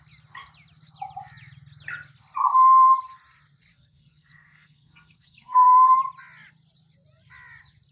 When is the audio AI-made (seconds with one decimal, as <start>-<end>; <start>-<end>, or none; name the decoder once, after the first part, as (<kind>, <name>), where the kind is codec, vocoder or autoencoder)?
3.7-5.9 (codec, SNAC)